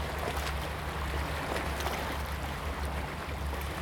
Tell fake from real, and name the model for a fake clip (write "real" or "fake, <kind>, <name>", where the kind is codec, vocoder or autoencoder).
real